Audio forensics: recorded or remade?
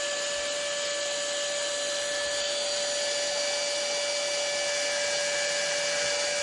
recorded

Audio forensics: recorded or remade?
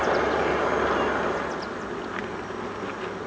recorded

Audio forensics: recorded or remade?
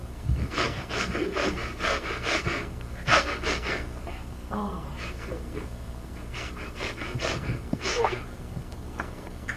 remade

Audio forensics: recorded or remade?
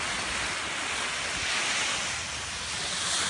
recorded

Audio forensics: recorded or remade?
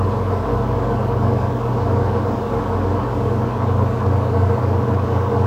remade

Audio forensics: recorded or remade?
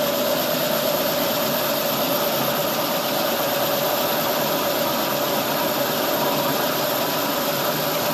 remade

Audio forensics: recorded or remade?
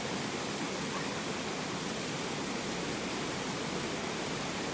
recorded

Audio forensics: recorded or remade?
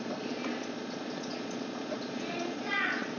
remade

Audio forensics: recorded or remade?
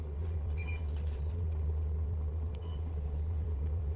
remade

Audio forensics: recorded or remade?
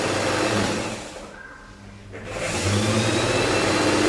recorded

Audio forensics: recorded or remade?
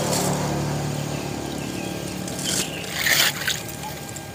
recorded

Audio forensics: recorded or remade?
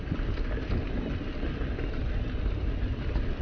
recorded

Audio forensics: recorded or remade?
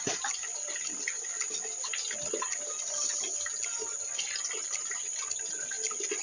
recorded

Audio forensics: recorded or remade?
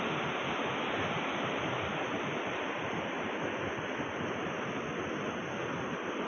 recorded